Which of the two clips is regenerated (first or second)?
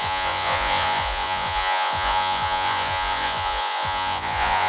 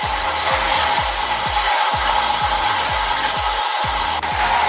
first